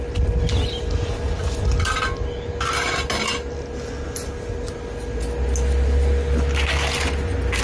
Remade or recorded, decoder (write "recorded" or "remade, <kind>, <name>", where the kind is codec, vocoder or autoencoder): recorded